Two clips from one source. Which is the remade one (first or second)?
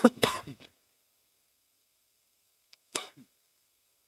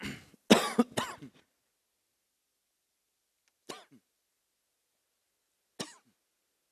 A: first